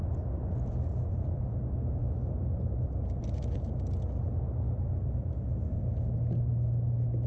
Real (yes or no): yes